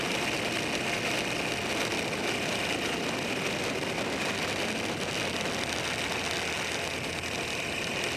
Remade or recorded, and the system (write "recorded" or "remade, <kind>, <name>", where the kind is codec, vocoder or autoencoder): recorded